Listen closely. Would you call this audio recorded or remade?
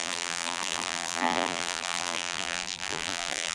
remade